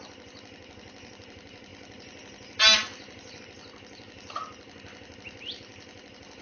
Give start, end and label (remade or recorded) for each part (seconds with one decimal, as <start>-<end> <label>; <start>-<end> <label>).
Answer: 0.0-1.7 recorded; 1.7-3.4 remade; 3.4-5.7 recorded; 5.7-6.4 remade